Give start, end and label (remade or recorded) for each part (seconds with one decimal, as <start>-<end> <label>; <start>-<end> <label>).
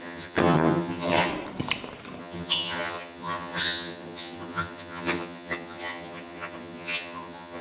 0.0-1.3 remade; 1.3-2.2 recorded; 2.2-7.6 remade